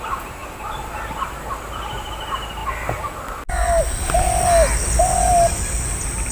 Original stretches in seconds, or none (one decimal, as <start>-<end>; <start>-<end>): 0.0-6.3